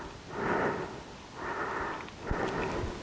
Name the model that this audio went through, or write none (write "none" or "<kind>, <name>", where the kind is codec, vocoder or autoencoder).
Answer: none